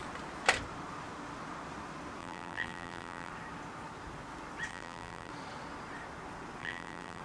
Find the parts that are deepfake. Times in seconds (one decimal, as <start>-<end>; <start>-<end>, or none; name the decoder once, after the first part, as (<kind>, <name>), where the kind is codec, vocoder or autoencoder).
2.2-3.3 (vocoder, BigVGAN v2); 4.7-5.3; 6.6-7.2